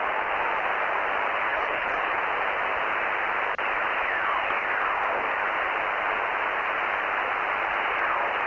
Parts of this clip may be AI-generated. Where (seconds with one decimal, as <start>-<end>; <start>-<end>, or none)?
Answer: 1.5-2.2